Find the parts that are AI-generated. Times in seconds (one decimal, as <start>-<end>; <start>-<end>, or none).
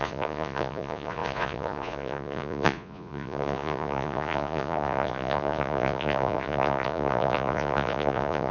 0.0-8.5